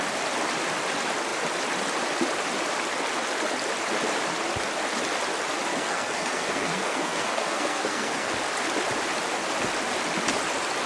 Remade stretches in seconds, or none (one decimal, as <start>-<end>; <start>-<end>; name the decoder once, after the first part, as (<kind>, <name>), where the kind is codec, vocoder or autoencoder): 5.7-8.3 (codec, SNAC)